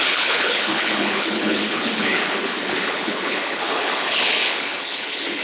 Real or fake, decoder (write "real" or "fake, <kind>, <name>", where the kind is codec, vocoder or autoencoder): fake, codec, HILCodec